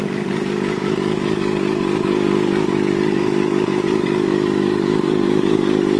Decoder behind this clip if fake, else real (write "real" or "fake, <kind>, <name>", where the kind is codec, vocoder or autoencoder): fake, codec, DAC